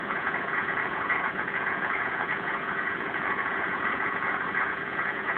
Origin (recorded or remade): remade